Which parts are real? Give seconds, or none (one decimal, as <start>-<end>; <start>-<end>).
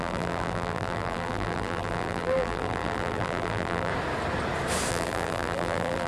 3.9-4.9